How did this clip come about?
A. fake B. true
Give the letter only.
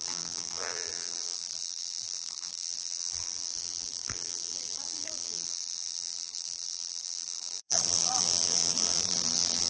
A